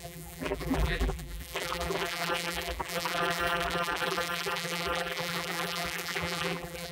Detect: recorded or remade remade